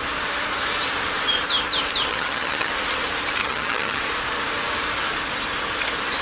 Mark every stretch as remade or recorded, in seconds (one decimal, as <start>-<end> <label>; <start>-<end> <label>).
0.0-2.1 recorded; 2.1-2.7 remade; 2.7-3.4 recorded; 3.4-4.0 remade; 4.0-6.2 recorded